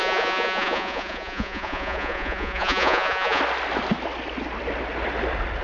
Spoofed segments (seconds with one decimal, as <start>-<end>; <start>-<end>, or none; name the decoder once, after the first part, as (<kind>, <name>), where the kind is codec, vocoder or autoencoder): 0.0-3.4 (vocoder, Vocos)